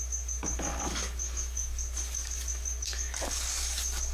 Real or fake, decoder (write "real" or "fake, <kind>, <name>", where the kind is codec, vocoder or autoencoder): fake, codec, DAC